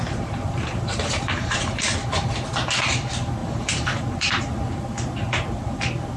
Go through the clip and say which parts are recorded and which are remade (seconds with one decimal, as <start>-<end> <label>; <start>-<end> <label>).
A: 0.0-1.8 remade; 1.8-3.4 recorded; 3.4-4.4 remade; 4.4-6.2 recorded